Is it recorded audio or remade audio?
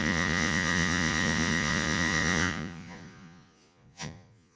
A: remade